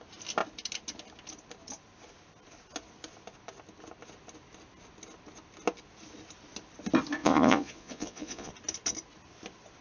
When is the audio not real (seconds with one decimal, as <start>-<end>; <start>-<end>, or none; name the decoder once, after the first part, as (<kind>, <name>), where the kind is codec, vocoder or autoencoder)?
7.2-8.5 (vocoder, Vocos)